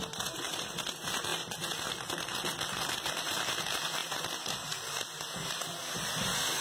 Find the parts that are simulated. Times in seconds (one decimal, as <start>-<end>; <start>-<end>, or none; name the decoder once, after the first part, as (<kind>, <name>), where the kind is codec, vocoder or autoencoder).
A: none